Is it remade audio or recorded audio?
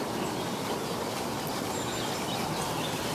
recorded